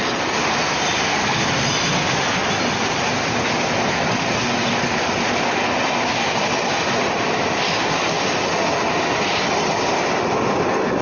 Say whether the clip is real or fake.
real